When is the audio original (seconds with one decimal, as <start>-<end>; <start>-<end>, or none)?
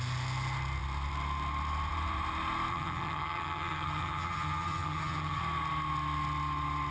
0.0-2.7; 5.4-6.9